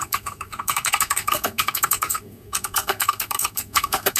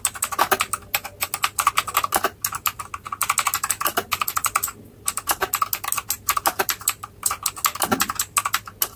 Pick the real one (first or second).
second